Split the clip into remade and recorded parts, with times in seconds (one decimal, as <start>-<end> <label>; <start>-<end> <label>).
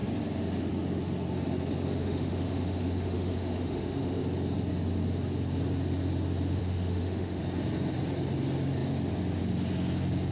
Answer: 0.0-2.0 recorded; 2.0-4.2 remade; 4.2-6.6 recorded; 6.6-7.4 remade; 7.4-10.3 recorded